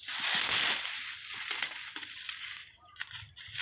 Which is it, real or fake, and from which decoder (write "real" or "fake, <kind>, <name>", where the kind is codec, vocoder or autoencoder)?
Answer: real